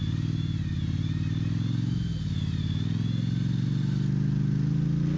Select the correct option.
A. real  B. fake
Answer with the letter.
A